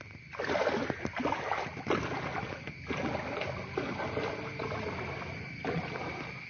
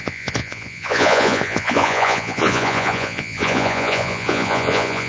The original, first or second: first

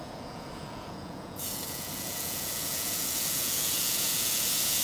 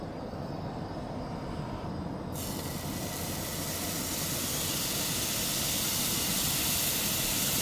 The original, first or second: second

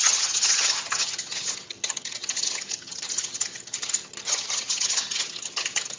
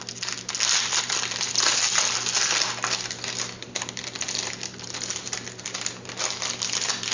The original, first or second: second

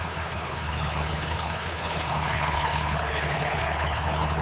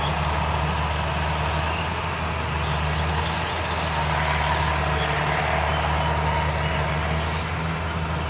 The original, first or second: second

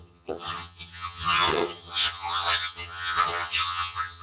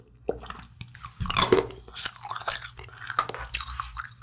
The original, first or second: second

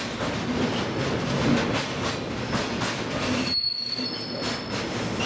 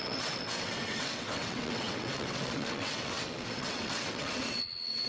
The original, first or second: first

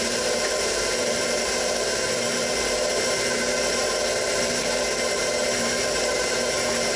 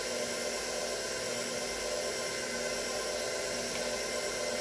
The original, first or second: second